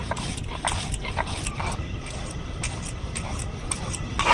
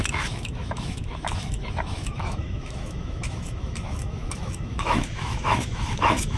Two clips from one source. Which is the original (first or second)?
first